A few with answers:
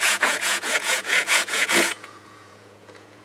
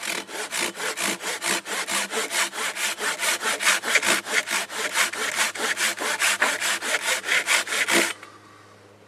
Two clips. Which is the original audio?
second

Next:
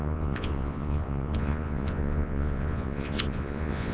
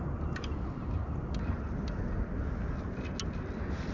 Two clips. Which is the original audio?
second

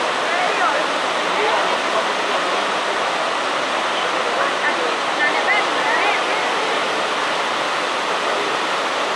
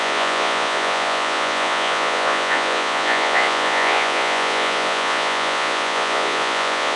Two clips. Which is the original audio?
first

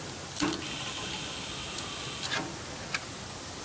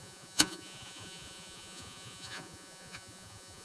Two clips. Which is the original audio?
first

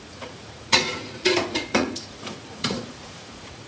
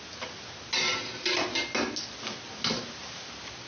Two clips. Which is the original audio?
second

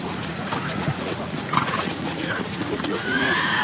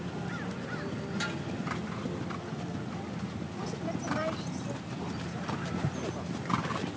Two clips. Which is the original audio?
second